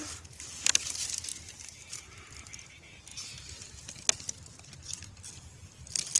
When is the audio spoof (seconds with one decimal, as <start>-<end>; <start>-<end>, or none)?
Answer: 1.3-2.7; 3.1-3.7

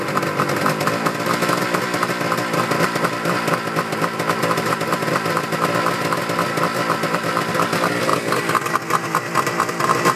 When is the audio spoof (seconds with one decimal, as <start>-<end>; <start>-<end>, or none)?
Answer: 6.7-7.5

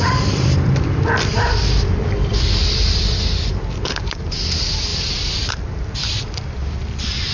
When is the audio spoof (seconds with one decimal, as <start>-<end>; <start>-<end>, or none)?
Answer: 0.0-7.3

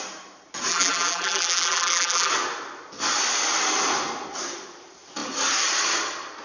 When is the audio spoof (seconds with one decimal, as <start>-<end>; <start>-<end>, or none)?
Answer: 0.7-2.3

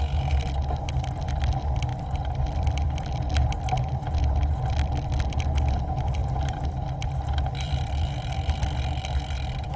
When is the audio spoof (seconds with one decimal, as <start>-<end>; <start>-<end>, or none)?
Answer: 1.9-3.1; 6.2-8.6

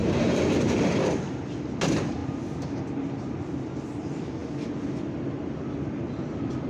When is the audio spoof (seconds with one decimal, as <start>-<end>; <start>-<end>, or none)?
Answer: 0.0-1.0

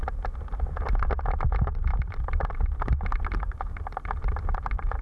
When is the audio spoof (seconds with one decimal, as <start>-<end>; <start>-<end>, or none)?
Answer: 1.9-5.0